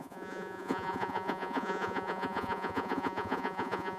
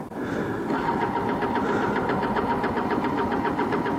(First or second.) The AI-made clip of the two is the first